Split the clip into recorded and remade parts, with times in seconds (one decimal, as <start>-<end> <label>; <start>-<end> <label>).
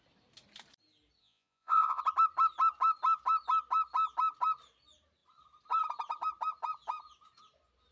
0.0-1.2 recorded; 1.2-2.0 remade; 2.0-7.9 recorded